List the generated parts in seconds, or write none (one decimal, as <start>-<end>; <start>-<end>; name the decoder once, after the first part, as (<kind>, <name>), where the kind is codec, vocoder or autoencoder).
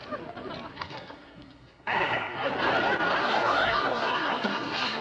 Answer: 0.7-2.5 (codec, SNAC); 3.2-5.0